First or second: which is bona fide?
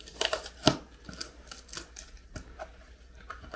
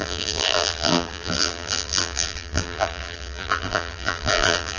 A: first